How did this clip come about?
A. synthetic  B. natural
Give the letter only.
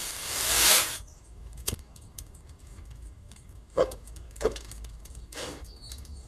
A